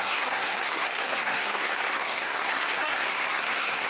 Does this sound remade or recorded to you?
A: remade